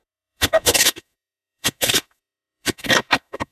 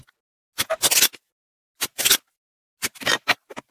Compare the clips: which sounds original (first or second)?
second